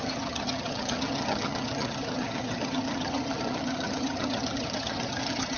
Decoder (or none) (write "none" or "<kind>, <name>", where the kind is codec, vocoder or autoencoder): vocoder, HiFi-GAN